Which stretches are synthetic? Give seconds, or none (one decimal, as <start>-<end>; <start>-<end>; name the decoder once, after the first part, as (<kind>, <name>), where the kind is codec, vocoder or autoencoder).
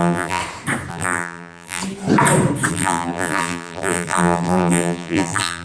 0.0-0.4 (vocoder, BigVGAN v2); 0.9-1.8; 2.7-5.6